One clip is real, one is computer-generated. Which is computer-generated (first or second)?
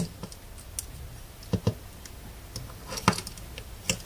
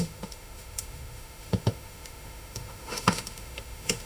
second